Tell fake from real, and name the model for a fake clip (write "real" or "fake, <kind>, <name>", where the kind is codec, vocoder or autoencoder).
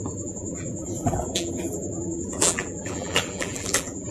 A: fake, vocoder, BigVGAN v2